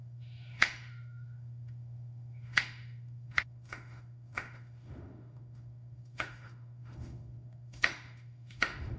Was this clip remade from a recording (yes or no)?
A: yes